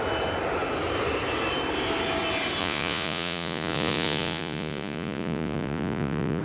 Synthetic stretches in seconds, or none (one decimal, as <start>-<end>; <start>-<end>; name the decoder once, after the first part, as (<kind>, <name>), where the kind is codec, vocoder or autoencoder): 2.6-6.4 (vocoder, Vocos)